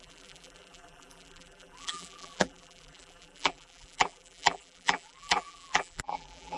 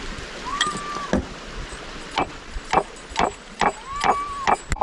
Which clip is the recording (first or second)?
second